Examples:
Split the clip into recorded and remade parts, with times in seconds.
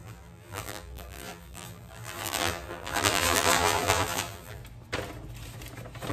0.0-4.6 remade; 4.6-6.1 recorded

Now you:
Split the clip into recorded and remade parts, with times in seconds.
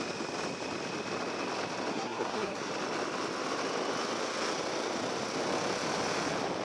0.0-1.9 recorded; 1.9-2.7 remade; 2.7-6.6 recorded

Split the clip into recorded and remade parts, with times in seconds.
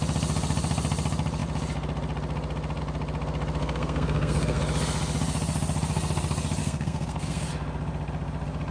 0.0-3.6 recorded; 3.6-4.6 remade; 4.6-6.6 recorded; 6.6-7.5 remade; 7.5-8.7 recorded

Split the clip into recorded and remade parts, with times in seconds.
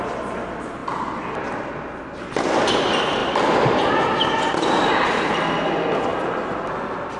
0.0-7.2 recorded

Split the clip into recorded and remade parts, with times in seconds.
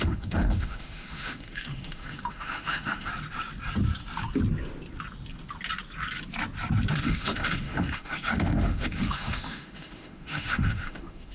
0.0-3.1 remade; 3.1-6.9 recorded; 6.9-11.3 remade